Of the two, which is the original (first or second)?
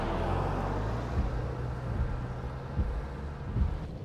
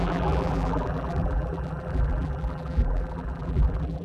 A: first